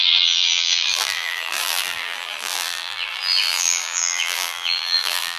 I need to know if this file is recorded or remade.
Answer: remade